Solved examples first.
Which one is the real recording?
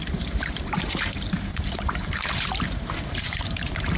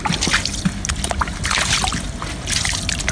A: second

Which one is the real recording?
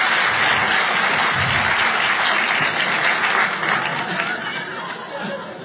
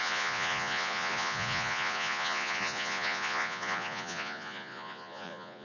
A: first